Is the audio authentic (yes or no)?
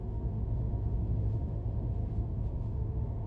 no